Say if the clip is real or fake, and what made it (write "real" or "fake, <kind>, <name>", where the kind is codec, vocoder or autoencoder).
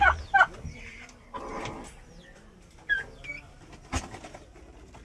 real